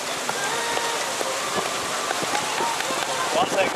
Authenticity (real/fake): real